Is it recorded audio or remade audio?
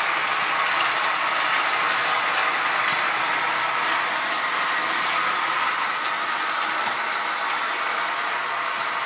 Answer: recorded